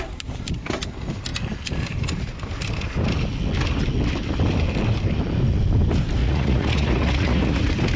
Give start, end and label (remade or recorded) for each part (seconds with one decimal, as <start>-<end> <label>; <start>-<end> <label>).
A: 0.0-6.2 recorded; 6.2-7.6 remade; 7.6-8.0 recorded